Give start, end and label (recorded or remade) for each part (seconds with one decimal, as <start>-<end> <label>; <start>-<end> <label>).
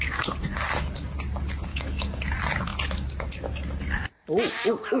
0.0-1.7 recorded; 1.7-2.2 remade; 2.2-5.0 recorded